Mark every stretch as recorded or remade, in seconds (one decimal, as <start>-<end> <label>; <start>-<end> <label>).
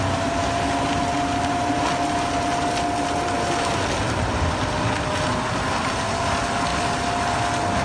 0.0-7.8 recorded